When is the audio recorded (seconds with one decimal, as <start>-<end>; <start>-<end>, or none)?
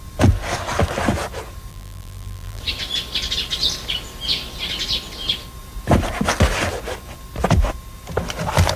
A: 0.0-1.7; 2.6-8.8